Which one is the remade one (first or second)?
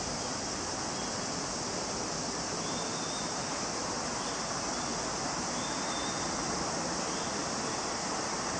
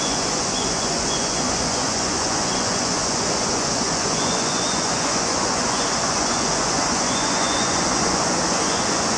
second